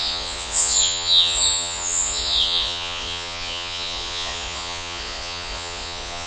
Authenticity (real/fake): fake